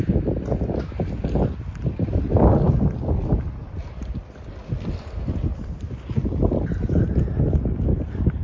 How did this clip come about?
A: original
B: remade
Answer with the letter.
A